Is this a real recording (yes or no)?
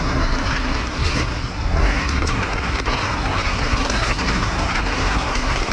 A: no